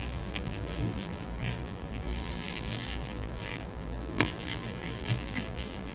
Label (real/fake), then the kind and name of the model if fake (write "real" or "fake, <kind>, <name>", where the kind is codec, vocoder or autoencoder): fake, vocoder, BigVGAN v2